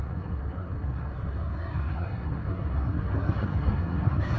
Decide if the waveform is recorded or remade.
remade